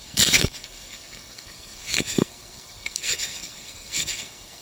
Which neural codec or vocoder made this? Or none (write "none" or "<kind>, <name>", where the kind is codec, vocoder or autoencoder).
codec, SNAC